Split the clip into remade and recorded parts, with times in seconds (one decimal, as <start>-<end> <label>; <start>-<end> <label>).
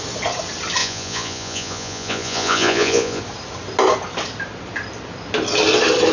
0.0-0.8 recorded; 0.8-3.2 remade; 3.2-6.1 recorded